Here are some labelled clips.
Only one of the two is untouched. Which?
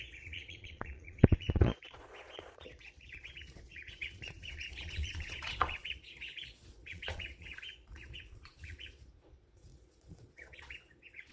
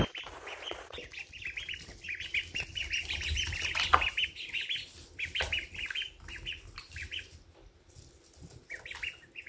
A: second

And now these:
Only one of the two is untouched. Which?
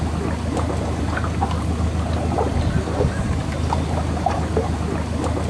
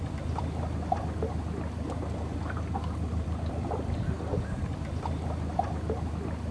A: first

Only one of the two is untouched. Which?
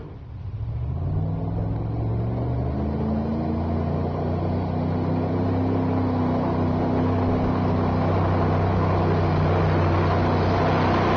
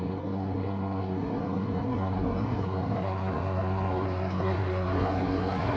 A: first